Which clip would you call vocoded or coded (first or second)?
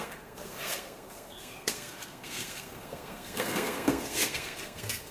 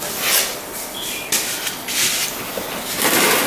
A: first